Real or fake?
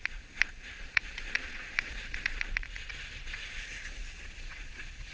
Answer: fake